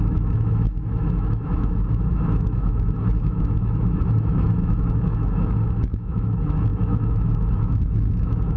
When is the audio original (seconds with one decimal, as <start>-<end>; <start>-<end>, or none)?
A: none